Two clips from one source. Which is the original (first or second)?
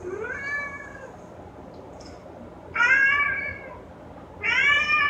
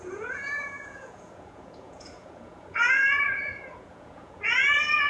first